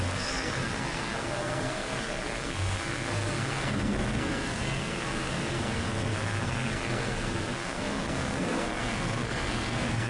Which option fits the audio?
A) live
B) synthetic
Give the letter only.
B